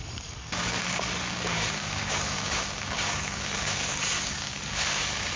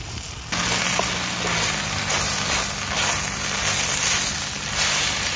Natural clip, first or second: second